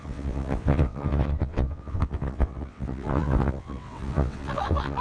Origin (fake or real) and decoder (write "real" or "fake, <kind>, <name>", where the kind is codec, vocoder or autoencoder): fake, vocoder, WaveNeXt